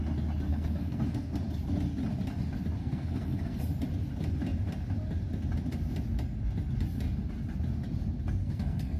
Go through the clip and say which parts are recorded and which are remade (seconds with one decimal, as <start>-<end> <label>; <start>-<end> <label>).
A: 0.0-0.5 recorded; 0.5-1.3 remade; 1.3-2.8 recorded; 2.8-3.6 remade; 3.6-8.4 recorded; 8.4-9.0 remade